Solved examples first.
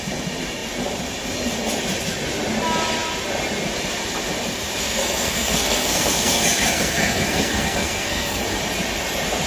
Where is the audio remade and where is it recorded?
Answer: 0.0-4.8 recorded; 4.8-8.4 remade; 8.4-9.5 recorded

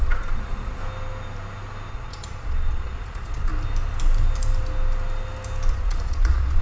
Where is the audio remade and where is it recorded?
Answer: 0.0-0.8 remade; 0.8-1.9 recorded; 1.9-3.5 remade; 3.5-5.7 recorded; 5.7-6.6 remade

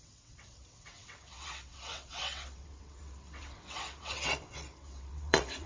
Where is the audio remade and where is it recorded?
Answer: 0.0-5.7 remade